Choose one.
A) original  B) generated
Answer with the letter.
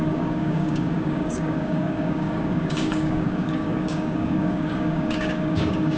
B